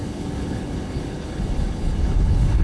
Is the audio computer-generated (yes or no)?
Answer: yes